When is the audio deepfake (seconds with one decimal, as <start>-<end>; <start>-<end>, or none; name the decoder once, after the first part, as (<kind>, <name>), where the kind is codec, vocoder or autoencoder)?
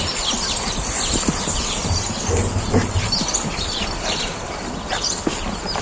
none